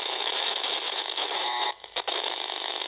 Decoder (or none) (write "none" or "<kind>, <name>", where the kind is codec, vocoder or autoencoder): autoencoder, DAC-VAE